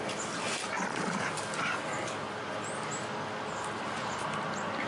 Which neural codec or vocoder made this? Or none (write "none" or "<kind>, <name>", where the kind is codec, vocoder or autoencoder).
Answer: none